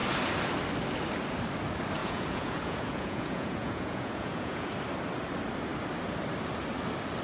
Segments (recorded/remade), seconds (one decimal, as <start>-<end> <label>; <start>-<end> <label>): 0.0-2.0 recorded; 2.0-4.7 remade; 4.7-7.2 recorded